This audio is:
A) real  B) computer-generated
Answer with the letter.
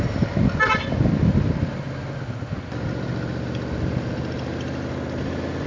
A